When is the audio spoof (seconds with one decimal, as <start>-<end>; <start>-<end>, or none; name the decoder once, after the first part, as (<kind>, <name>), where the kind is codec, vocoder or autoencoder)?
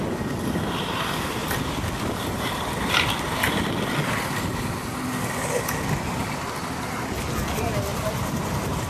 7.9-8.9 (vocoder, BigVGAN v2)